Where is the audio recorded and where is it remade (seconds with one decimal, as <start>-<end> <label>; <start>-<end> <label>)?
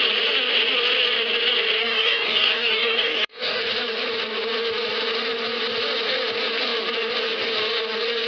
0.0-1.8 recorded; 1.8-3.6 remade; 3.6-8.3 recorded